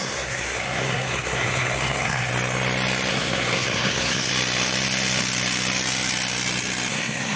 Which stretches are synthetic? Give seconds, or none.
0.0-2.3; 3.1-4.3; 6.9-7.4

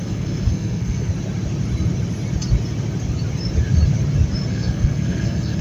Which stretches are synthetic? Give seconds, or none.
0.0-1.1; 4.5-5.6